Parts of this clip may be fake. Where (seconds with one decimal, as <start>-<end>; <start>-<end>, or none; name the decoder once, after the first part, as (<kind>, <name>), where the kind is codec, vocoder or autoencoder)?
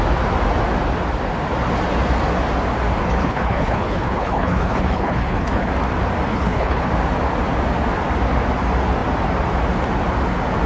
3.2-5.7 (codec, HILCodec); 6.3-6.9